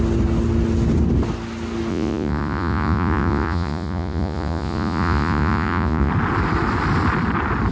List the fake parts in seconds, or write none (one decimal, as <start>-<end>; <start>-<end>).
1.9-6.1